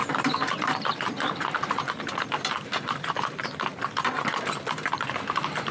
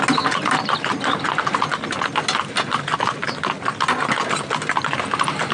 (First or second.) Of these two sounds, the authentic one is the second